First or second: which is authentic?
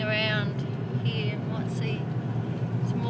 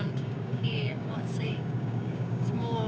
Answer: first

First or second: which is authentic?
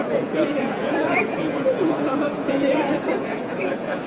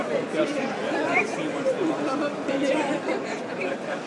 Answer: second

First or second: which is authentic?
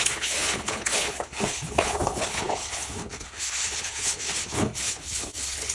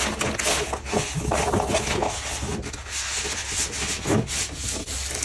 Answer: second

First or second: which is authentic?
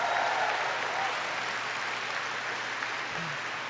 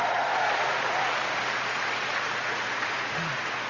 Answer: first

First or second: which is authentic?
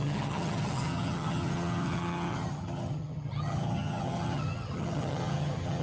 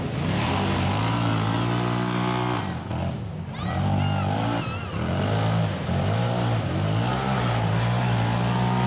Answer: second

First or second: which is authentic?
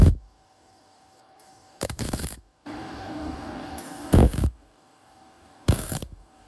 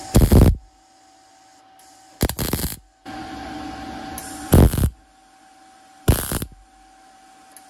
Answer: second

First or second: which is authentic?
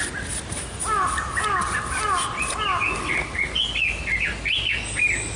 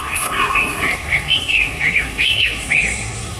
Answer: first